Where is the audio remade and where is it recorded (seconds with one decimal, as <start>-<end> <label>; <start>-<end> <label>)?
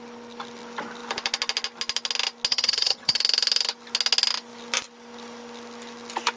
0.0-2.5 recorded; 2.5-3.2 remade; 3.2-6.4 recorded